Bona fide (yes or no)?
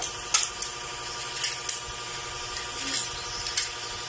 yes